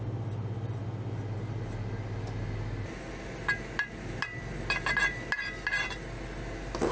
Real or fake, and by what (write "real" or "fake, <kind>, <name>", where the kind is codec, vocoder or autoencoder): real